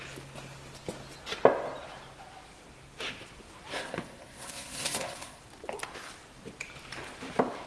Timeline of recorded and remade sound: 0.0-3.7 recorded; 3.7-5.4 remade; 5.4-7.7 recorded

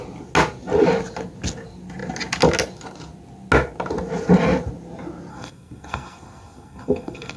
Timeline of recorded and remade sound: 0.0-5.3 recorded; 5.3-7.4 remade

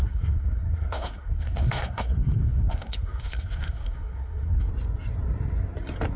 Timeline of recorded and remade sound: 0.0-4.7 remade; 4.7-6.2 recorded

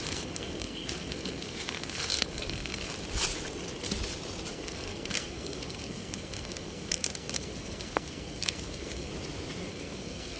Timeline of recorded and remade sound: 0.0-2.9 remade; 2.9-4.5 recorded; 4.5-9.1 remade; 9.1-9.7 recorded; 9.7-10.4 remade

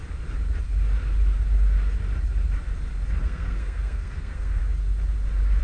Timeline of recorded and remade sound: 0.0-3.2 recorded; 3.2-4.6 remade; 4.6-5.6 recorded

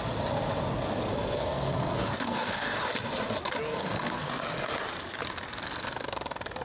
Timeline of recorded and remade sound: 0.0-1.1 recorded; 1.1-2.8 remade; 2.8-3.7 recorded; 3.7-4.3 remade; 4.3-6.6 recorded